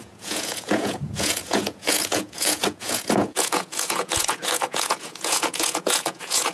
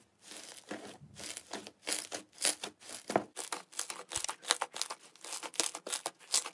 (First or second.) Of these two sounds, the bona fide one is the second